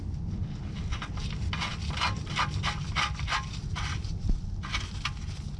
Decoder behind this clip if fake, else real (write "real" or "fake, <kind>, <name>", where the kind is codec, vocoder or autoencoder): real